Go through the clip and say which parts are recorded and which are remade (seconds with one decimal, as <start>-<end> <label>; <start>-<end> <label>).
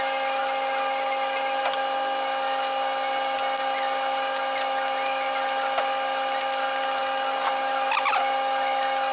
0.0-9.1 recorded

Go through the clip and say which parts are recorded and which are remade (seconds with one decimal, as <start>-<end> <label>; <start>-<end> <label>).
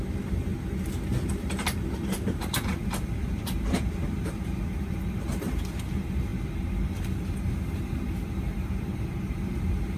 0.0-0.5 remade; 0.5-1.3 recorded; 1.3-10.0 remade